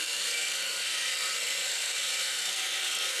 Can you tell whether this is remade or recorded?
remade